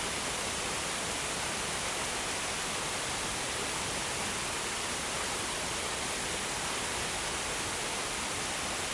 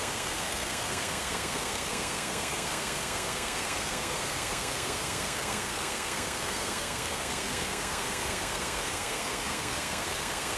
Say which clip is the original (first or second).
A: first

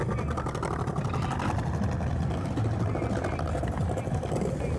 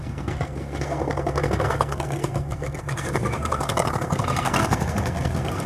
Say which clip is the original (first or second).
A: first